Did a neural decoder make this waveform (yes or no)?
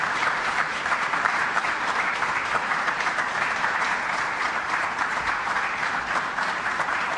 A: yes